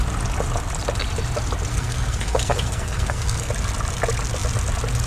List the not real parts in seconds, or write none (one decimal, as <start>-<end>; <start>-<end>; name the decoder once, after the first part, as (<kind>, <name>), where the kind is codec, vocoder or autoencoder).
1.7-3.5 (codec, SNAC)